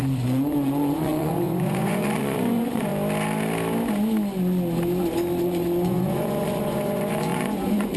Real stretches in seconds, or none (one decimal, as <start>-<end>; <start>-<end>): 2.9-5.4